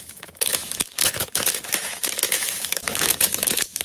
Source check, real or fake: fake